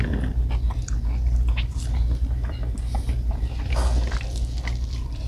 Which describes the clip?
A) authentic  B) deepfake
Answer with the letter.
A